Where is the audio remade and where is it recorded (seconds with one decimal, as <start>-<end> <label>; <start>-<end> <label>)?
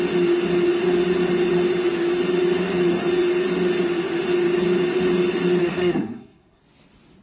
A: 0.0-5.6 recorded; 5.6-6.6 remade; 6.6-7.2 recorded